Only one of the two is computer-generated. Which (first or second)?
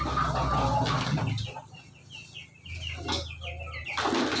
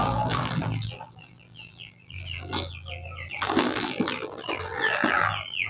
second